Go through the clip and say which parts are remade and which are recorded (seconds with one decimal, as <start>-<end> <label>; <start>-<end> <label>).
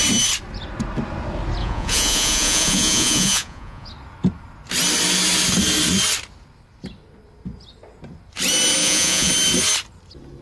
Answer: 0.0-1.6 recorded; 1.6-3.9 remade; 3.9-8.8 recorded; 8.8-9.3 remade; 9.3-10.4 recorded